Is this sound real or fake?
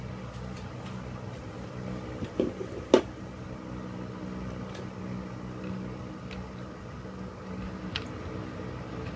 real